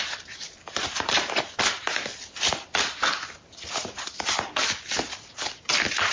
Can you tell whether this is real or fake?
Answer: real